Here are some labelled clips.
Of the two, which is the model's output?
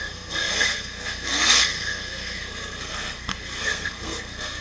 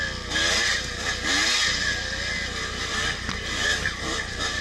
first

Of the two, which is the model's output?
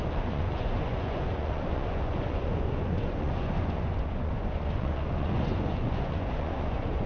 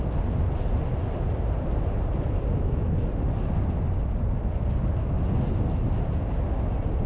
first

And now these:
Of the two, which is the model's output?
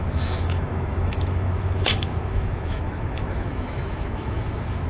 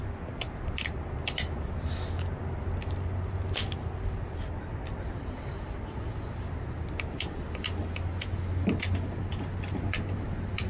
first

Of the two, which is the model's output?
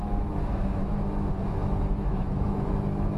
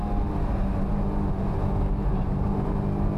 first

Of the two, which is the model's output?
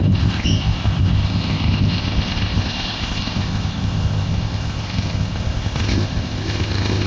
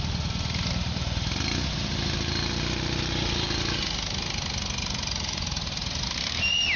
first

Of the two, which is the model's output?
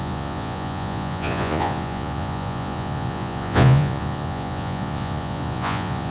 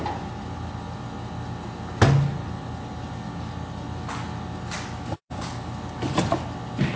first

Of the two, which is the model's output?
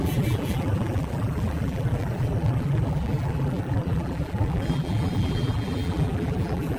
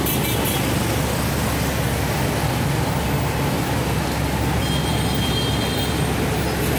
first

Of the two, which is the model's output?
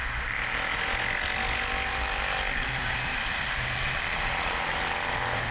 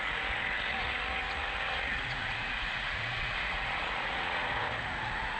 second